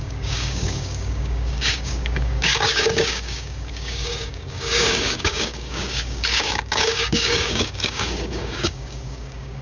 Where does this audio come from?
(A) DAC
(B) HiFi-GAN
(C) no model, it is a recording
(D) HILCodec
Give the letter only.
A